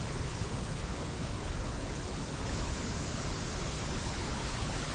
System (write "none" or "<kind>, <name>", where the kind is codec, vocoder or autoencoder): codec, HILCodec